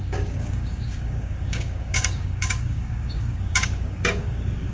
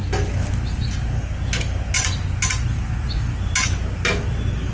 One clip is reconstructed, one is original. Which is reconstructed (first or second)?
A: first